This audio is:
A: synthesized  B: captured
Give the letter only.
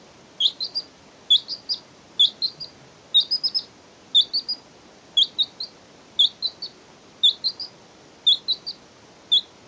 B